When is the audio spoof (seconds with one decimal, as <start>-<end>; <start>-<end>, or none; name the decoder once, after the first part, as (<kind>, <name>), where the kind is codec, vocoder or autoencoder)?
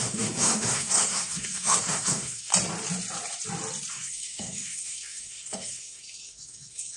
0.0-2.5 (codec, SNAC); 3.9-7.0